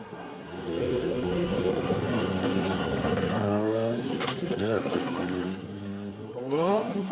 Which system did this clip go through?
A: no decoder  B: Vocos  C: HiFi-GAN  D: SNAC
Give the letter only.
D